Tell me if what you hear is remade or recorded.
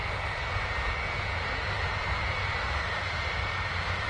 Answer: remade